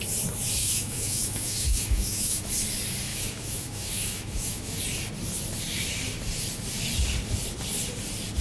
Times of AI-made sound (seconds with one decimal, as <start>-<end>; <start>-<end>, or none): 0.6-2.5; 3.1-4.8